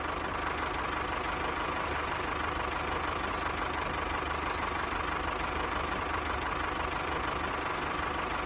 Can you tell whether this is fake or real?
real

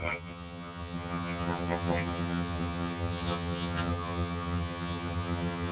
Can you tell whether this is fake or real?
fake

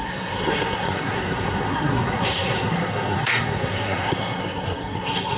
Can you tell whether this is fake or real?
fake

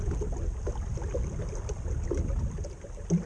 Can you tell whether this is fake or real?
real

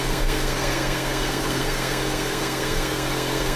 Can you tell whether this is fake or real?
fake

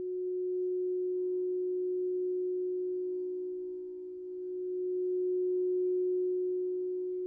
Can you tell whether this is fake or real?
real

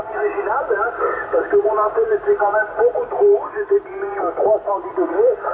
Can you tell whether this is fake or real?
real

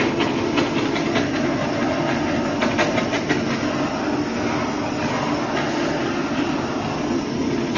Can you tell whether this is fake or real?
real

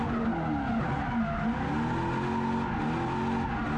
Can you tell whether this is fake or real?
real